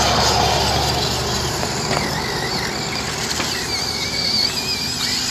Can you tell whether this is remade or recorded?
recorded